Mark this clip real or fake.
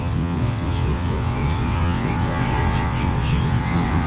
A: fake